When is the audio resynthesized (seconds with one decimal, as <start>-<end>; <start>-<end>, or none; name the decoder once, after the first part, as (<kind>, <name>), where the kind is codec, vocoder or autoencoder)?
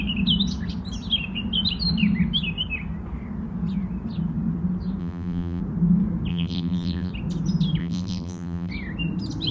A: 5.0-5.6 (vocoder, BigVGAN v2); 6.3-7.1; 7.8-8.7